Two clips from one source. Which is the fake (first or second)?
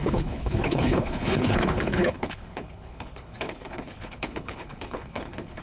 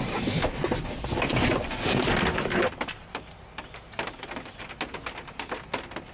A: first